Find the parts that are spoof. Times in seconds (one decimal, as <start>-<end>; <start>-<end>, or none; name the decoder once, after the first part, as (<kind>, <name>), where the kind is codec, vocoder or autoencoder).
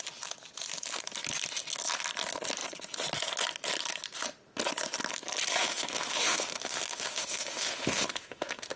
5.6-8.8 (autoencoder, DAC-VAE)